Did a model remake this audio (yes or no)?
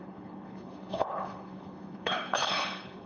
yes